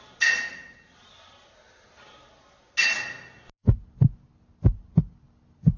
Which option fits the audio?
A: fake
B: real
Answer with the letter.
B